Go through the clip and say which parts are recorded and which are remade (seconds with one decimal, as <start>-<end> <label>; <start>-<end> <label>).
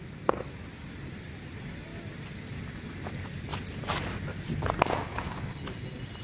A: 0.0-6.2 recorded